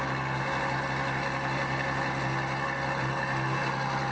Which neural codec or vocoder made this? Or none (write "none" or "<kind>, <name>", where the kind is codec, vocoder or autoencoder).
none